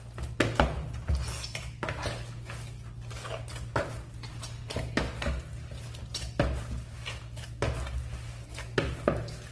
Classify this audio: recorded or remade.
recorded